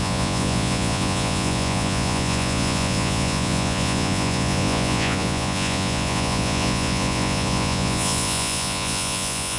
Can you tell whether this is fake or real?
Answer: fake